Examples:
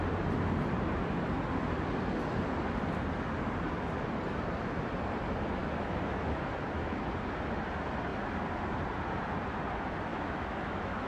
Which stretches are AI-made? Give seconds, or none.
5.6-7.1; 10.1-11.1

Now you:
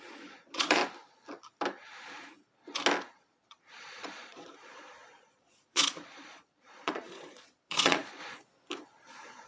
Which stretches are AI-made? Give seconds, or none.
0.0-0.8; 3.1-8.2